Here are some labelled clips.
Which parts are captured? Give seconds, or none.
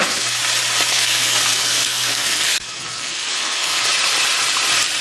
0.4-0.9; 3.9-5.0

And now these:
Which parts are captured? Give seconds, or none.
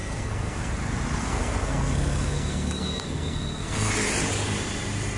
0.7-1.2; 3.9-5.2